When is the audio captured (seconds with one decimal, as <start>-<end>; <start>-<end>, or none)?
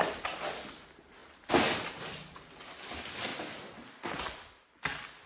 0.0-5.3